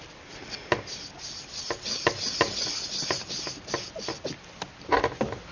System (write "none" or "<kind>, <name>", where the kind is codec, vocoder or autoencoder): none